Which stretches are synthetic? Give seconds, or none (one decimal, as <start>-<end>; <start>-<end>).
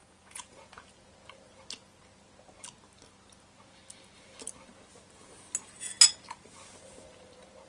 0.0-0.9